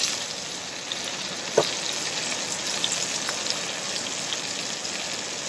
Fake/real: real